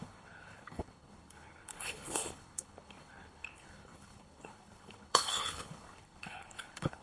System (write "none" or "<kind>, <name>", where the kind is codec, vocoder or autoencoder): codec, HILCodec